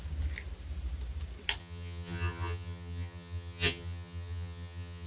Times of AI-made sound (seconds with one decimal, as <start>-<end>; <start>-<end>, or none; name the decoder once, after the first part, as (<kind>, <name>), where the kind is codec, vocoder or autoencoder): 1.6-5.1 (vocoder, HiFi-GAN)

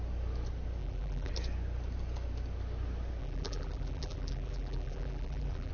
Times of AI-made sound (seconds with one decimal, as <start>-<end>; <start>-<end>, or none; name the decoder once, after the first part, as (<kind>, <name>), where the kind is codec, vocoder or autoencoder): 0.8-1.3 (vocoder, BigVGAN v2); 3.2-5.7

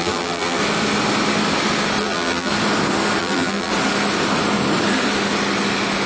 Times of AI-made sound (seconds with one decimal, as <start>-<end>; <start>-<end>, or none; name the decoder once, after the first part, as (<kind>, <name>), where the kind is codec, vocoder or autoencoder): 0.0-0.6 (vocoder, BigVGAN v2); 2.0-2.5; 3.2-3.7

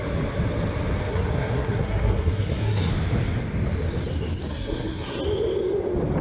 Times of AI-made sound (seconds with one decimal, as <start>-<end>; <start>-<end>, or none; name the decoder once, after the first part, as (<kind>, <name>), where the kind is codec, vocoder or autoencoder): 1.1-2.9 (codec, SNAC); 4.5-5.2